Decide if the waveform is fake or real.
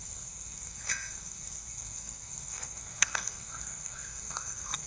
fake